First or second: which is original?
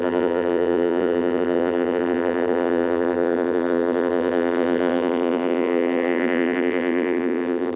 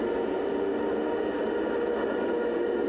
second